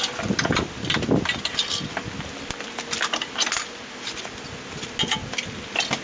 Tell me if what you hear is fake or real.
real